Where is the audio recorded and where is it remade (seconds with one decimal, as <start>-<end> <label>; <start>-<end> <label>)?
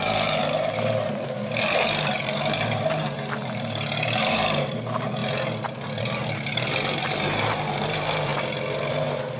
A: 0.0-5.2 remade; 5.2-6.0 recorded; 6.0-8.3 remade; 8.3-8.9 recorded; 8.9-9.4 remade